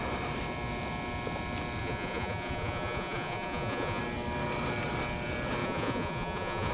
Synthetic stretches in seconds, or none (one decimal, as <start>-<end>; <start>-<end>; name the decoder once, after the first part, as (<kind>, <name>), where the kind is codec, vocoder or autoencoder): 1.8-4.0 (vocoder, Vocos); 5.6-6.7

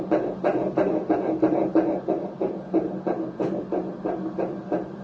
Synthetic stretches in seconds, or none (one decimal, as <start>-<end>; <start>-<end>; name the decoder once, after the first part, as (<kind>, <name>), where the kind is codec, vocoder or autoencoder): none

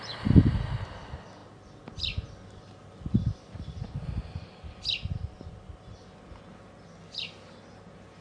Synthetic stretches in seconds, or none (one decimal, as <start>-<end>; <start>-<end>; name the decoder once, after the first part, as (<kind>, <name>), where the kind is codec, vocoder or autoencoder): none

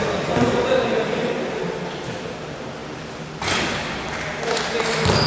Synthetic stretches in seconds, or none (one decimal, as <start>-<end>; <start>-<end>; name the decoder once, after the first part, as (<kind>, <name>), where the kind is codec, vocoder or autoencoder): none

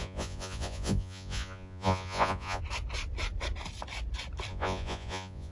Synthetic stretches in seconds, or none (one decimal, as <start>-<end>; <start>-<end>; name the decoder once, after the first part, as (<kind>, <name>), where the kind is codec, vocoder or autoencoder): 0.0-2.6 (vocoder, Vocos); 4.5-5.5

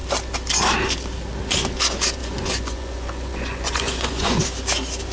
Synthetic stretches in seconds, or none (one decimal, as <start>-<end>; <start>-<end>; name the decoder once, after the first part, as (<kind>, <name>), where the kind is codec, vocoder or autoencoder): 2.2-4.4 (vocoder, Vocos)